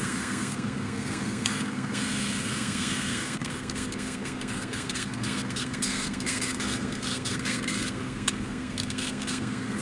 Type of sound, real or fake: fake